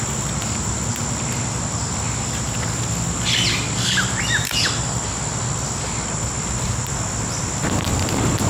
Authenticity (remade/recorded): recorded